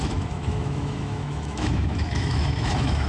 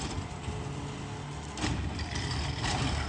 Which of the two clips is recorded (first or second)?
second